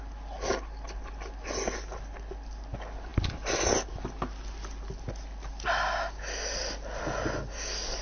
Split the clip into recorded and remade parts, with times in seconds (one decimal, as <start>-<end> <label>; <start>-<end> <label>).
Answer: 0.0-8.0 recorded